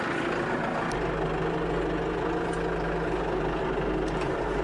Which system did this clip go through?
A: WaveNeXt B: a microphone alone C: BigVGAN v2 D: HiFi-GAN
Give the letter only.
B